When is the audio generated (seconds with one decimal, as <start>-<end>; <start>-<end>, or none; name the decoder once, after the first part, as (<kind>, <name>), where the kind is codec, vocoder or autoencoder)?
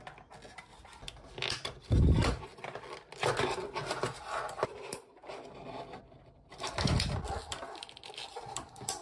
none